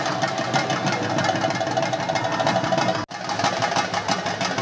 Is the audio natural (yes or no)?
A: yes